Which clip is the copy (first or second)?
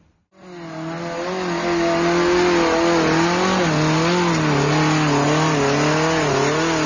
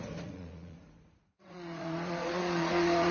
second